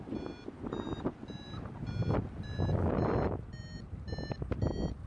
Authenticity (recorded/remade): recorded